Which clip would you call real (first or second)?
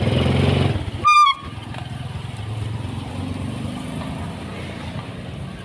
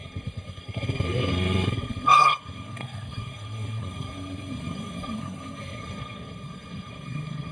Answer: first